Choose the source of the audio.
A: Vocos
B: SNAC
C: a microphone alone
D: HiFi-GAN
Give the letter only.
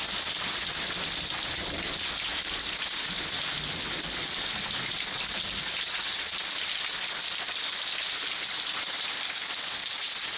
C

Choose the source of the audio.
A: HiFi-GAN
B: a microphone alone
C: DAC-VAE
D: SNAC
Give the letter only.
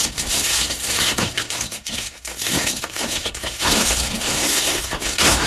D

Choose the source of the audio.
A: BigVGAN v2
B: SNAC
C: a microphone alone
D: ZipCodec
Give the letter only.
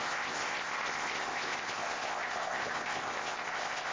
D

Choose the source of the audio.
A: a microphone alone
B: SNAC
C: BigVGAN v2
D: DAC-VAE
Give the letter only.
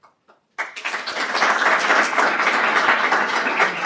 A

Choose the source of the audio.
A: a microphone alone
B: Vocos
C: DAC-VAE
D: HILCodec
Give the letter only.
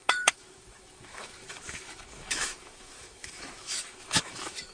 C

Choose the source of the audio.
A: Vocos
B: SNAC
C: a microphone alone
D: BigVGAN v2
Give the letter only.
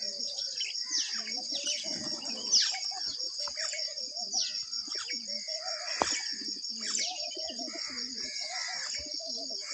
C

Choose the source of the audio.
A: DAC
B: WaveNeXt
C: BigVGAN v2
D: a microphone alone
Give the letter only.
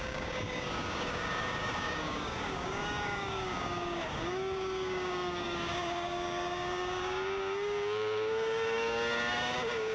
A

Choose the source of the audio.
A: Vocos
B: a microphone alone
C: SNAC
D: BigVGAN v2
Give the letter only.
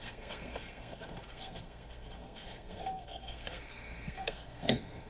C